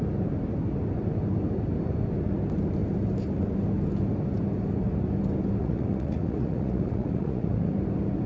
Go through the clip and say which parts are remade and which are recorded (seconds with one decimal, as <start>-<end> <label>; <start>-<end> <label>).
0.0-5.6 recorded; 5.6-7.7 remade; 7.7-8.3 recorded